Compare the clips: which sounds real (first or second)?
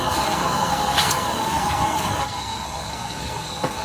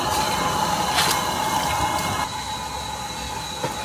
second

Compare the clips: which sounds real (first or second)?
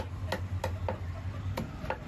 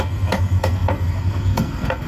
first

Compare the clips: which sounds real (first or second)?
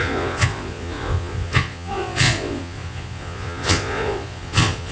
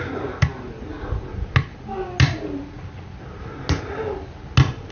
second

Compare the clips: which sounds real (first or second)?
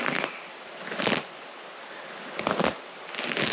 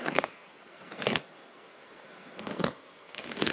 first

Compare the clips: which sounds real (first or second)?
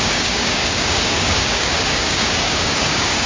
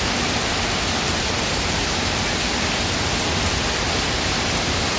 second